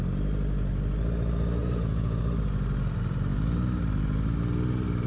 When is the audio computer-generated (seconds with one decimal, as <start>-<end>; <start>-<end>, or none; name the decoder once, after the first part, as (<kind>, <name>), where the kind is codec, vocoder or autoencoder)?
1.6-2.2 (vocoder, Vocos)